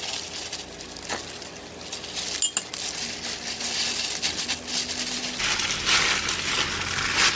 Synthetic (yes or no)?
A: no